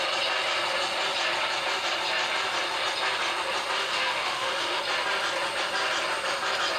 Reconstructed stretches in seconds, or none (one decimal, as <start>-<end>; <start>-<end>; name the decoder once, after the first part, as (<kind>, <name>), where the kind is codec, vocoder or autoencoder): 3.8-4.8 (autoencoder, DAC-VAE)